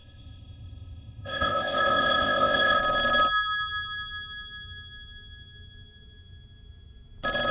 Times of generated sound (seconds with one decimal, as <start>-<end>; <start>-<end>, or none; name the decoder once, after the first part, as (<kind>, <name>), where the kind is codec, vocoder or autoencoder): 0.0-2.8 (codec, ZipCodec)